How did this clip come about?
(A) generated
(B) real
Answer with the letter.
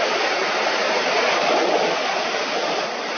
B